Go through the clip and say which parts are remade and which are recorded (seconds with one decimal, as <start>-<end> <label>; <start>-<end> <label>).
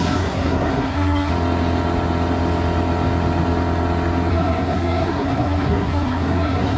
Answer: 0.0-1.3 remade; 1.3-4.3 recorded; 4.3-6.8 remade